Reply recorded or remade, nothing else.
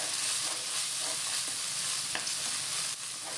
recorded